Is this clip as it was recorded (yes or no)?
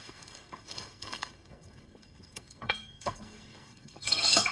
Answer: no